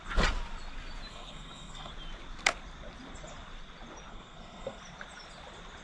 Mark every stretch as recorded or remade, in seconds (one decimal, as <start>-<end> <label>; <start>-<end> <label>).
0.0-1.1 recorded; 1.1-1.9 remade; 1.9-4.1 recorded; 4.1-4.8 remade; 4.8-5.8 recorded